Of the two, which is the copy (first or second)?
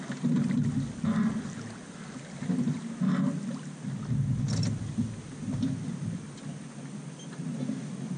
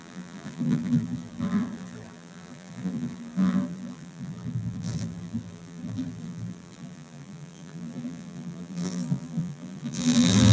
second